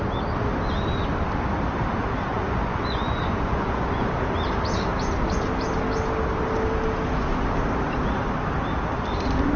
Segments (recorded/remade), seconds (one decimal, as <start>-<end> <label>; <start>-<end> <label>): 0.0-2.3 recorded; 2.3-4.1 remade; 4.1-9.6 recorded